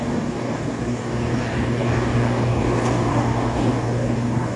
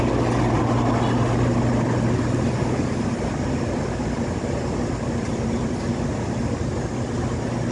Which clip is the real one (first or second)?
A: second